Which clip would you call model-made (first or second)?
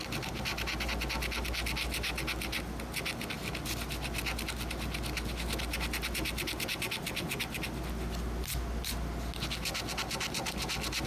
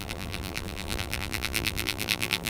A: second